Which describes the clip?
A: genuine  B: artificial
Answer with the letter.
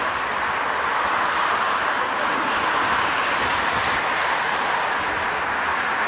A